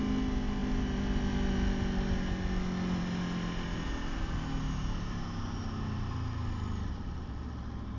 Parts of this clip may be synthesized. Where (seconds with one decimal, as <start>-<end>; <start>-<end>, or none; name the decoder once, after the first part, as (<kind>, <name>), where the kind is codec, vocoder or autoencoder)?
none